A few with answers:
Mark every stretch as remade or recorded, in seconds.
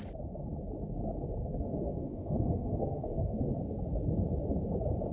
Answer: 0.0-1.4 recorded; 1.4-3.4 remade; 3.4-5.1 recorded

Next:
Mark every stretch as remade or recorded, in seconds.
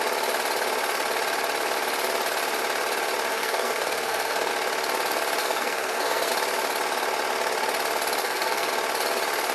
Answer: 0.0-3.3 recorded; 3.3-4.5 remade; 4.5-5.4 recorded; 5.4-6.3 remade; 6.3-8.2 recorded; 8.2-8.7 remade; 8.7-9.5 recorded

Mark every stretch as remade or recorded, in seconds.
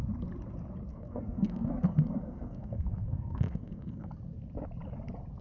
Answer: 0.0-0.9 recorded; 0.9-4.1 remade; 4.1-5.4 recorded